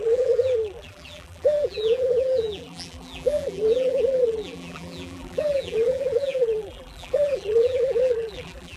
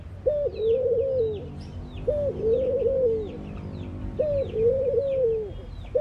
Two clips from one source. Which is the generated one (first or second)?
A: first